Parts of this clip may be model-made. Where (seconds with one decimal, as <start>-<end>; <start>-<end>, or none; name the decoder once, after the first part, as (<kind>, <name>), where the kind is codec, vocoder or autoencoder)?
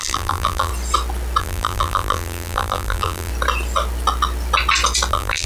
0.0-0.7 (vocoder, BigVGAN v2); 1.4-3.3; 5.1-5.5